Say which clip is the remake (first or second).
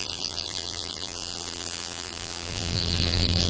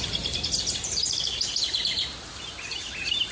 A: first